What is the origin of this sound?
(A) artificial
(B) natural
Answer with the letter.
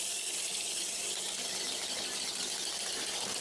B